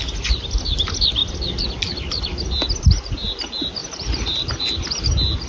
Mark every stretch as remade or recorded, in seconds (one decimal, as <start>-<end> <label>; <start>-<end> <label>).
0.0-3.8 recorded; 3.8-4.5 remade; 4.5-5.5 recorded